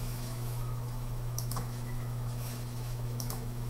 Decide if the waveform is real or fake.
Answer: fake